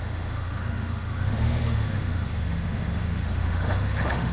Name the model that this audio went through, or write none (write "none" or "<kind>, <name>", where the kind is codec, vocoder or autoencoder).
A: autoencoder, DAC-VAE